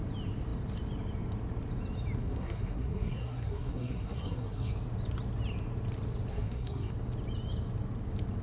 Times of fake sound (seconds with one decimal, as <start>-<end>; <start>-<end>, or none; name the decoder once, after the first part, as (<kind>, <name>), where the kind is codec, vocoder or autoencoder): 2.2-4.7 (codec, SNAC); 6.3-6.9